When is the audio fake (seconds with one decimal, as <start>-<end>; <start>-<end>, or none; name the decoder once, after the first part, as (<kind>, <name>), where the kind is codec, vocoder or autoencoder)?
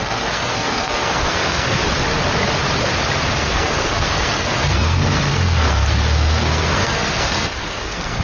0.0-1.8 (codec, SNAC); 3.3-8.2